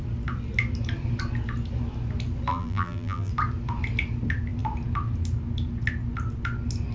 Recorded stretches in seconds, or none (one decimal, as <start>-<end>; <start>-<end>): 0.0-2.5; 3.3-6.9